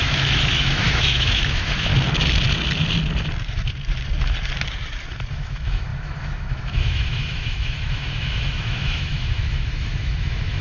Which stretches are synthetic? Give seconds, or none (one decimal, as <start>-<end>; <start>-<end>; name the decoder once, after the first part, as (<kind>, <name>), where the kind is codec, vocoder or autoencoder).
0.0-1.9 (autoencoder, DAC-VAE); 5.3-10.6